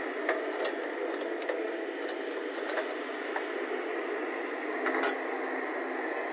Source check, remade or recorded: recorded